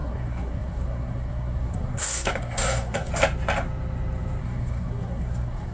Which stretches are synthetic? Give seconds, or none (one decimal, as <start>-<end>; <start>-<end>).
0.0-3.1; 4.4-5.7